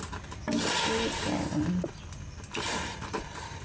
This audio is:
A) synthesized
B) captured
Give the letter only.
B